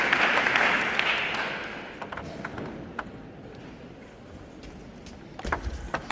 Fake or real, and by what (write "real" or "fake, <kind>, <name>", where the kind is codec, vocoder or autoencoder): real